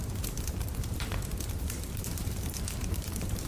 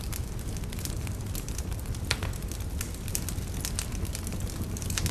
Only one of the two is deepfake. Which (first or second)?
first